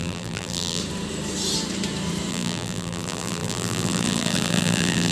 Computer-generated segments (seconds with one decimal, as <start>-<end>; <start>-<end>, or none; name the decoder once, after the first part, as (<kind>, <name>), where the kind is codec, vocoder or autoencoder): 0.0-0.8 (vocoder, BigVGAN v2); 2.3-5.1